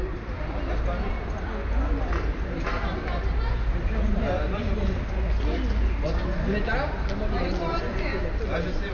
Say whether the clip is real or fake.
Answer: real